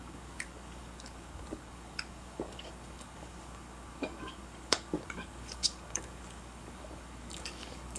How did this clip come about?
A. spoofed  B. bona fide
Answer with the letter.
A